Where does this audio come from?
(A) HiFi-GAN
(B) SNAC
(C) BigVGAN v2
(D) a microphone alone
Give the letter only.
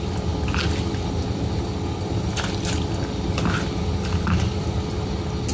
D